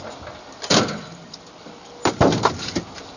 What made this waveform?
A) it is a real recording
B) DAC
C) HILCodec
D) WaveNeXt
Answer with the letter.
A